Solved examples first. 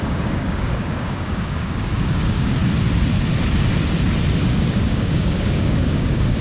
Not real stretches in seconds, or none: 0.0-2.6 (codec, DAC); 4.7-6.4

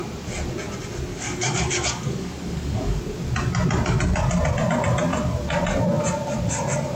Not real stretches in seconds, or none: 1.1-3.0 (codec, DAC)

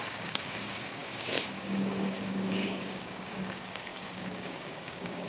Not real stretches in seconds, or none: 0.0-5.3 (codec, DAC)

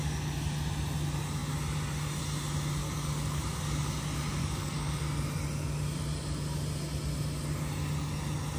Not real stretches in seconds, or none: 2.8-3.9 (codec, DAC); 4.4-5.0

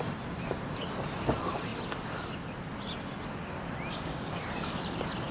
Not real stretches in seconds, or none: 3.9-4.8 (codec, DAC)

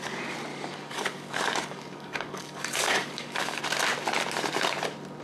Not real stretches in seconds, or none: 0.5-3.6 (codec, DAC)